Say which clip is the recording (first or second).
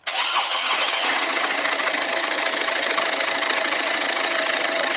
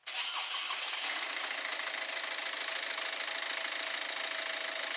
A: second